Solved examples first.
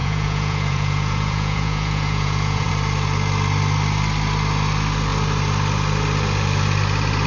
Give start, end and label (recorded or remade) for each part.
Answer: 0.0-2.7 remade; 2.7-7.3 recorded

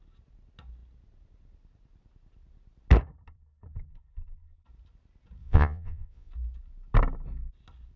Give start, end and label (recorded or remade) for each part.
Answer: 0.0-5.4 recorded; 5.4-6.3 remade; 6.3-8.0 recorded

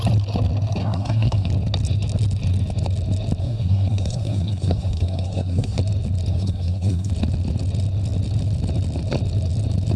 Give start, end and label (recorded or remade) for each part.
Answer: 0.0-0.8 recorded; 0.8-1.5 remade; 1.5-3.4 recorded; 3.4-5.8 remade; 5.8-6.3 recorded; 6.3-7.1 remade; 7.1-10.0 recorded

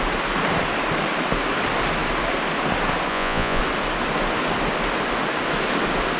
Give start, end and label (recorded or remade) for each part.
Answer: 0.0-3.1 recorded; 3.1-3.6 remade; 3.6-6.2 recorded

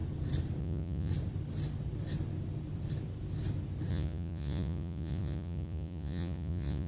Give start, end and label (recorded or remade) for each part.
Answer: 0.0-0.6 recorded; 0.6-1.1 remade; 1.1-3.9 recorded; 3.9-6.9 remade